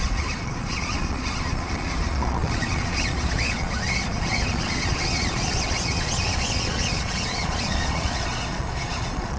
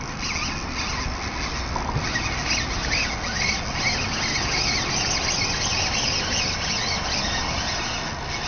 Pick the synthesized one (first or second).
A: first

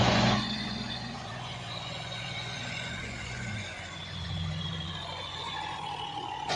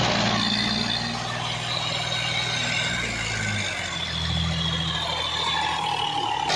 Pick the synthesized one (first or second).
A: first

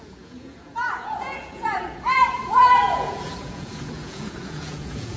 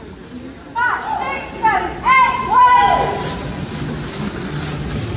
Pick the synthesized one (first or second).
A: first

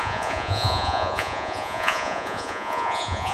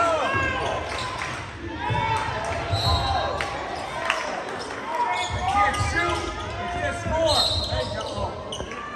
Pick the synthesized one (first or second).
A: first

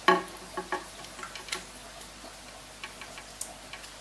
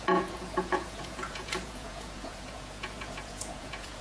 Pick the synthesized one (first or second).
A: second